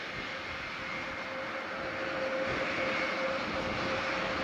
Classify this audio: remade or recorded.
recorded